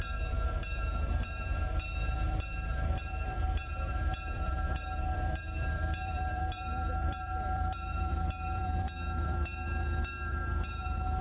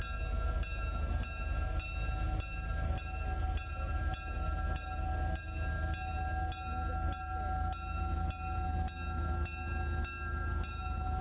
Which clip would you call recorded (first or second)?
second